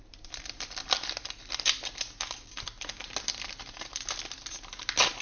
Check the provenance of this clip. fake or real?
real